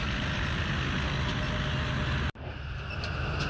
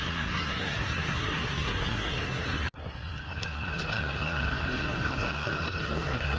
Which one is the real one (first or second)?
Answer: first